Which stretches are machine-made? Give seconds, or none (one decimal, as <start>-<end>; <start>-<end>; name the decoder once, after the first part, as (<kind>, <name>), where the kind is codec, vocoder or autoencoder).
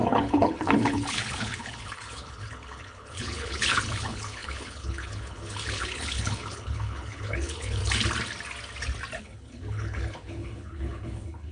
0.0-7.8 (codec, HILCodec); 9.2-11.5